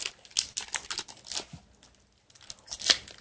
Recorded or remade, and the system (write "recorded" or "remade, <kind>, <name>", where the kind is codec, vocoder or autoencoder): recorded